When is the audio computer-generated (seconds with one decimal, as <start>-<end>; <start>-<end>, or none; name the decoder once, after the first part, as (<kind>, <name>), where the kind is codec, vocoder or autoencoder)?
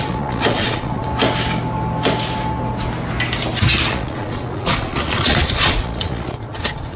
0.0-1.1 (vocoder, Vocos); 3.9-7.0